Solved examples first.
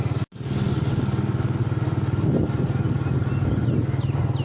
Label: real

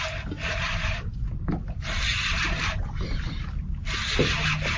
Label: real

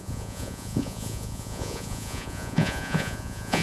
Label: fake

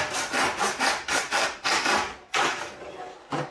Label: fake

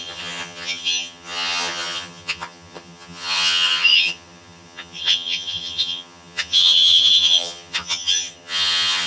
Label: fake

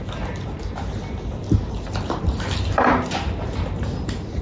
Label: real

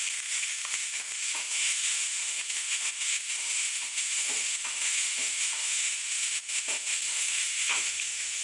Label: fake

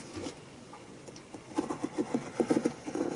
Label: fake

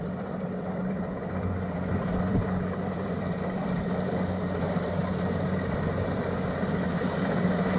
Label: fake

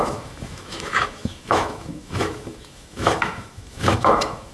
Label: fake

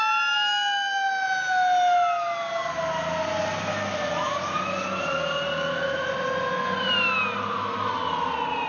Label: real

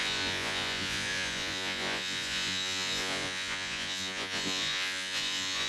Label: fake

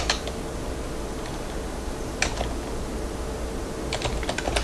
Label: real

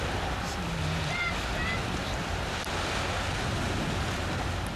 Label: real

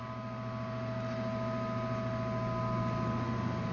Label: real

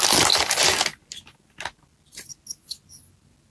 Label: real